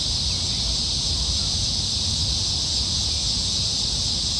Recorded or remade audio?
recorded